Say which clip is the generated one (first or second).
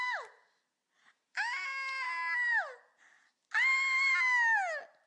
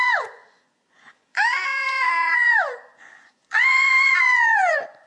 second